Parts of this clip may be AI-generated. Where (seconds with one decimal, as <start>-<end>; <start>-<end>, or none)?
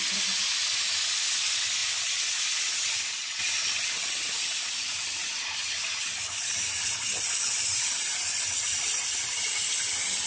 none